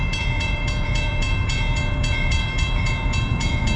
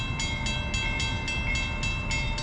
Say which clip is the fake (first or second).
first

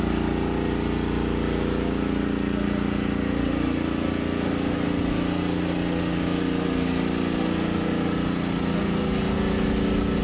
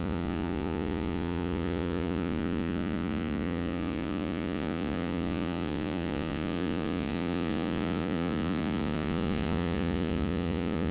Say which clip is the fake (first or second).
second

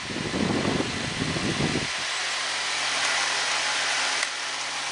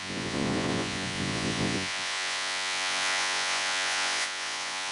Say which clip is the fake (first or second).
second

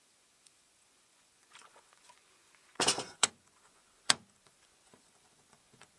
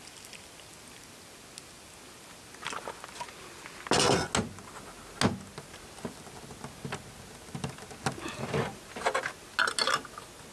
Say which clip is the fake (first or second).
first